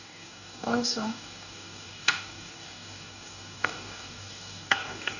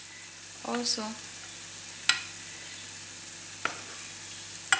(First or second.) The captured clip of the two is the second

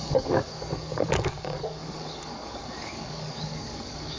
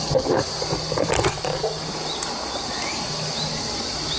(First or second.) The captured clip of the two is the second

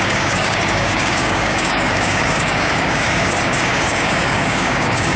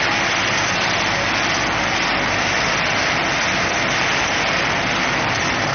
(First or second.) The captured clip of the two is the second